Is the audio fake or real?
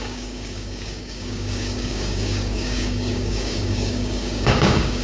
fake